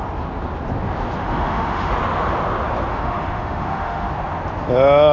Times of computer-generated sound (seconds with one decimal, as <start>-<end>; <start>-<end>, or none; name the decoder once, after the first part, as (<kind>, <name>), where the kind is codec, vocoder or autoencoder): 1.2-1.9 (autoencoder, DAC-VAE); 2.9-4.1

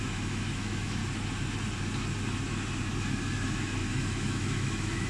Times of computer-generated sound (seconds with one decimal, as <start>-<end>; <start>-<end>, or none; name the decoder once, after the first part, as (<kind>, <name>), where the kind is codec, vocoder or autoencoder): 0.0-1.0 (autoencoder, DAC-VAE); 3.0-5.1

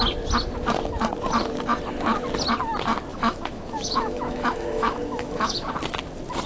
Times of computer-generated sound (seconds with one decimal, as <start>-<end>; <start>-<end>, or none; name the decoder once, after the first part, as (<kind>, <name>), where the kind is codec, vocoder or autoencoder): 3.1-5.7 (autoencoder, DAC-VAE)

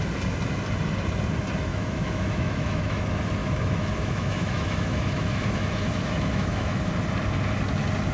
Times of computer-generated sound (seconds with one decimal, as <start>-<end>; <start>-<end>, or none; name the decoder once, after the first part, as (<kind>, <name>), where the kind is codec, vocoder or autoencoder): 1.7-3.0 (autoencoder, DAC-VAE); 3.4-6.9

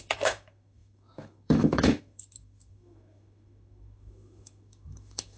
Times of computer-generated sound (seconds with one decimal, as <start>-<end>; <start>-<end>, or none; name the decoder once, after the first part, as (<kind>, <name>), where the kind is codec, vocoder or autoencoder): 0.0-5.4 (autoencoder, DAC-VAE)

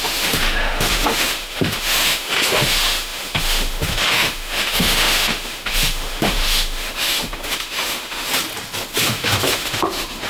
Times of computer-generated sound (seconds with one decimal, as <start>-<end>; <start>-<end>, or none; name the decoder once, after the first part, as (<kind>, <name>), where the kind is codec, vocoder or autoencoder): 0.0-8.3 (autoencoder, DAC-VAE); 9.0-10.3

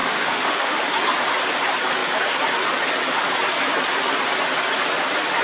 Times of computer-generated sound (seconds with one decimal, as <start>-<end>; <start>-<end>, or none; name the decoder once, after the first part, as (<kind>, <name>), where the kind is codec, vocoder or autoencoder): 0.0-0.8 (autoencoder, DAC-VAE)

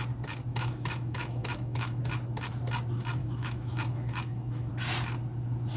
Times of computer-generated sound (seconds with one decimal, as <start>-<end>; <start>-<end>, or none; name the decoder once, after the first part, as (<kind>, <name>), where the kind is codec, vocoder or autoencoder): 0.5-2.0 (autoencoder, DAC-VAE); 3.2-4.7